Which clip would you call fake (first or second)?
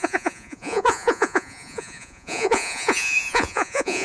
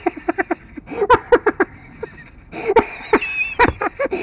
first